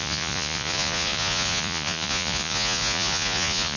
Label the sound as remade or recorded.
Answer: remade